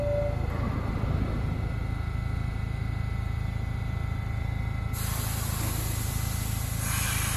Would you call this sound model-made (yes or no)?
no